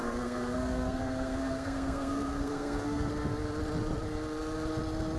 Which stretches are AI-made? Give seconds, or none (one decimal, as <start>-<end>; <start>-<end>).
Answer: 0.0-3.1